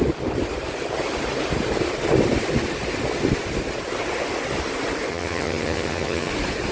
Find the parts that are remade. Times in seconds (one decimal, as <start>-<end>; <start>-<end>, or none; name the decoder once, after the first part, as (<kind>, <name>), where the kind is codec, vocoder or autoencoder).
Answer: 5.1-6.3 (vocoder, HiFi-GAN)